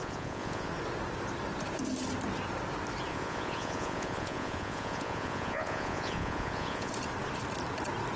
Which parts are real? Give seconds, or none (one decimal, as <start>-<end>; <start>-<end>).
0.7-3.1; 6.9-8.2